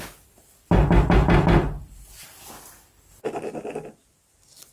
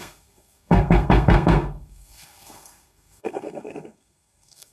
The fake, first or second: second